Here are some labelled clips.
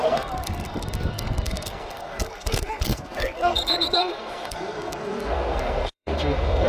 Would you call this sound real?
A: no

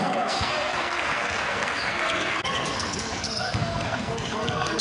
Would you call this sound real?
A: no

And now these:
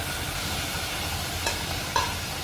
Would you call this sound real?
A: yes